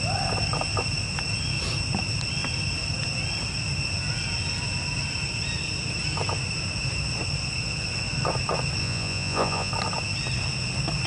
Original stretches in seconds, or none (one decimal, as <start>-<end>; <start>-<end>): 0.0-8.8; 9.7-11.1